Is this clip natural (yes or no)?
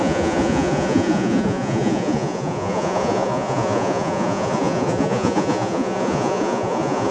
no